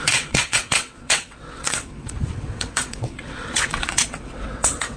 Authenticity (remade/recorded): remade